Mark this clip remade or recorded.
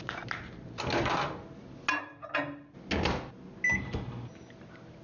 recorded